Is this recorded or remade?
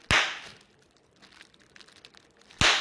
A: recorded